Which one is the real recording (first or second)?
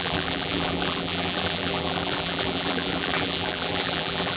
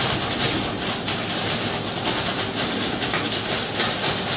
second